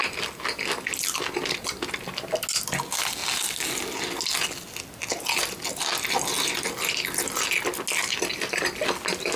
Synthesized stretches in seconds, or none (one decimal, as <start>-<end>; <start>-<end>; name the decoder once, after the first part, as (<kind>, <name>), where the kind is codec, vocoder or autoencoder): none